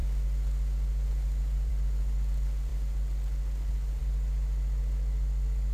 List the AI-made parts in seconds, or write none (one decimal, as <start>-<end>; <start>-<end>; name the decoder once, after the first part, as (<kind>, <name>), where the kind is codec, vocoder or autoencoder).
none